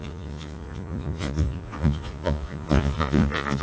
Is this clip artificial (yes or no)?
yes